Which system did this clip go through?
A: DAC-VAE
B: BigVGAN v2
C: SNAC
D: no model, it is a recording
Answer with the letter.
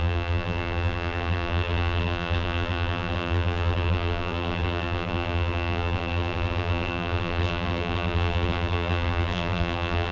B